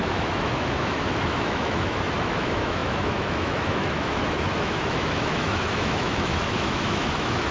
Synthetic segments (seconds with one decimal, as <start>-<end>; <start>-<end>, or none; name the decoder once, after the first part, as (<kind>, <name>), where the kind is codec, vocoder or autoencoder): 0.0-7.5 (autoencoder, DAC-VAE)